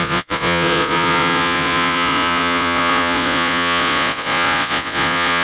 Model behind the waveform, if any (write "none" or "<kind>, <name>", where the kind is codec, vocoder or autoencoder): vocoder, Vocos